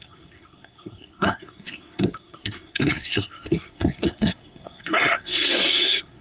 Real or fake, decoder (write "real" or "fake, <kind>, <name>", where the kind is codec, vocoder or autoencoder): fake, codec, SNAC